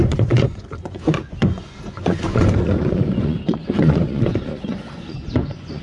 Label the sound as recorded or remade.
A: remade